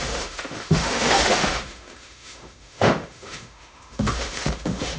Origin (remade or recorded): remade